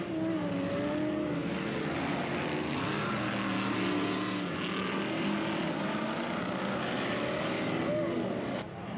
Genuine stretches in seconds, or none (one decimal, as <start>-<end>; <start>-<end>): 0.0-9.0